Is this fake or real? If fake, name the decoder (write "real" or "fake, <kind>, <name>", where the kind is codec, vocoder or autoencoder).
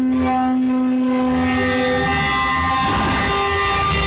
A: real